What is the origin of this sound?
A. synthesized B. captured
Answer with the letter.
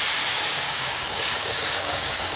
A